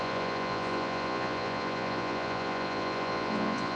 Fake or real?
fake